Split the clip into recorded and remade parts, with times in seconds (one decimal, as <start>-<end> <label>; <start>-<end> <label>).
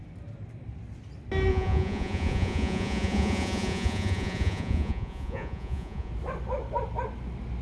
0.0-1.5 recorded; 1.5-6.1 remade; 6.1-7.6 recorded